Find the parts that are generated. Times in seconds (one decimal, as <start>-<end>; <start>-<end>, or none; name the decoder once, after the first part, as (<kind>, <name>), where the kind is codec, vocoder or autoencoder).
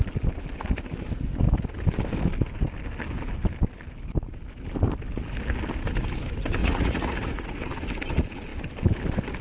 6.6-7.7 (vocoder, Vocos)